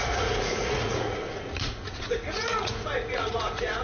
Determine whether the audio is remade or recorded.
remade